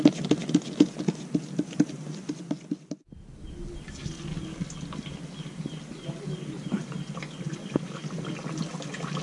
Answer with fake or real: real